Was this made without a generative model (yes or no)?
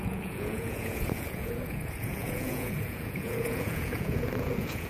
no